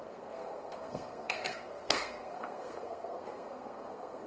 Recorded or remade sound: remade